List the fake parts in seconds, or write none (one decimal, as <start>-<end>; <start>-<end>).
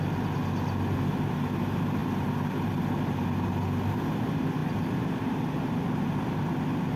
none